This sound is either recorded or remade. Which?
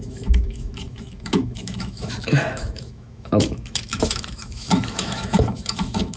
remade